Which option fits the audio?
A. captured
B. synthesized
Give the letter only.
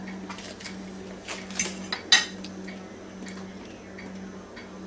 A